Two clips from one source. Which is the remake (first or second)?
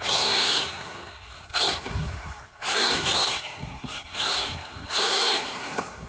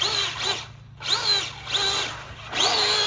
first